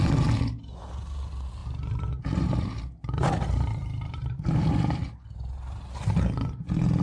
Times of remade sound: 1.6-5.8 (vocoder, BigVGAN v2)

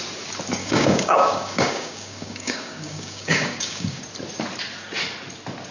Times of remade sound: 0.6-4.0 (codec, DAC)

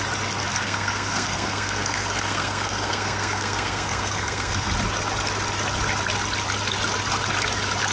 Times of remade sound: 0.5-4.7 (codec, SNAC)